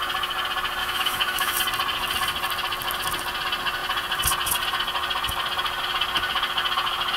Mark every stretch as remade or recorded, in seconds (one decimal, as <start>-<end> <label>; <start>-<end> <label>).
0.0-0.8 recorded; 0.8-1.6 remade; 1.6-7.2 recorded